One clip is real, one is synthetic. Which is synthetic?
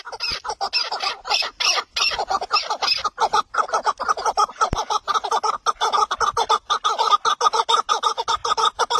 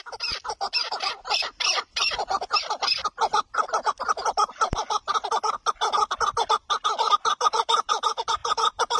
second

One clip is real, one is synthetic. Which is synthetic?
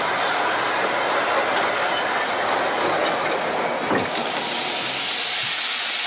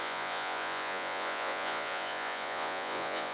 second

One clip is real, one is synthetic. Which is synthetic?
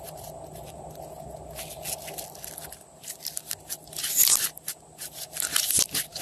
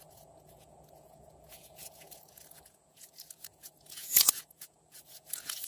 second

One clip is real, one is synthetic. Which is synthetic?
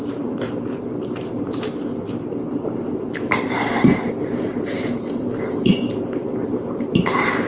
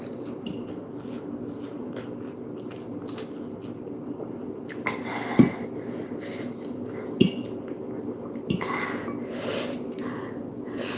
first